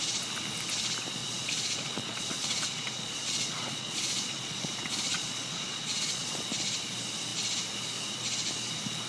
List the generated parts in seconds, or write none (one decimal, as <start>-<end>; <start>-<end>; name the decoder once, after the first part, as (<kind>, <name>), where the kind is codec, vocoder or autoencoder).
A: 1.2-6.4 (vocoder, Vocos)